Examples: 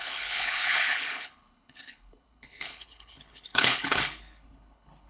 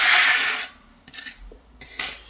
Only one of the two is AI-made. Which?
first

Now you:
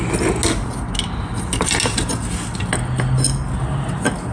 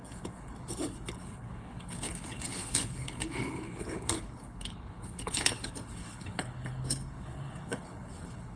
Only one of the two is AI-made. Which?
second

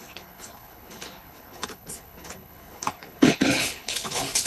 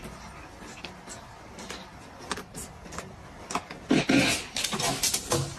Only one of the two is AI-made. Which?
first